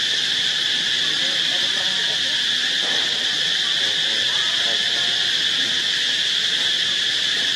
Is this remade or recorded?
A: recorded